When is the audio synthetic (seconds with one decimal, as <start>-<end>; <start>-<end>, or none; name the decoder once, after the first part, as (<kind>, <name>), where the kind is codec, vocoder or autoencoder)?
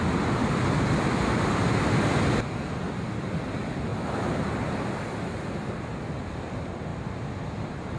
0.4-1.6 (vocoder, BigVGAN v2); 6.9-8.0